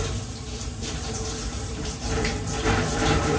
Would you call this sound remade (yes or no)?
yes